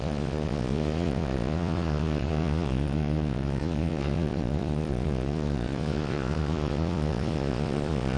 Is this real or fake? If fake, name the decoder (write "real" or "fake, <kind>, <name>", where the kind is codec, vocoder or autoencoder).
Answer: fake, vocoder, Vocos